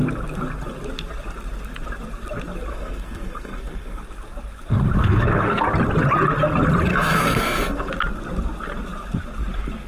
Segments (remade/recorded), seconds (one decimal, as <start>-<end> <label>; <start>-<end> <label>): 0.0-2.7 recorded; 2.7-4.0 remade; 4.0-5.0 recorded; 5.0-5.6 remade; 5.6-6.9 recorded; 6.9-7.9 remade; 7.9-9.9 recorded